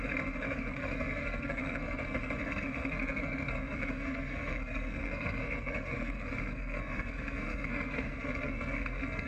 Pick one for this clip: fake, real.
fake